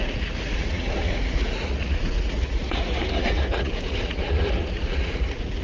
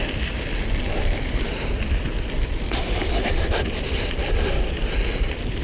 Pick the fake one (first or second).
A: first